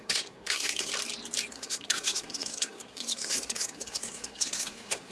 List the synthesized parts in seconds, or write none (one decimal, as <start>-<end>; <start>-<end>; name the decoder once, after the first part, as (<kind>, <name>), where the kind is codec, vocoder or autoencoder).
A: 0.0-0.9 (codec, SNAC); 1.5-5.1